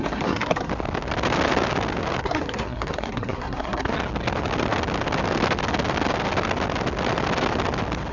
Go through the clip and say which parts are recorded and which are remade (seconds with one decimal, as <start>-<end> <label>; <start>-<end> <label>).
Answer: 0.0-0.7 remade; 0.7-2.2 recorded; 2.2-3.9 remade; 3.9-8.1 recorded